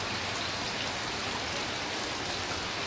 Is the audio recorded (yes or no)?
yes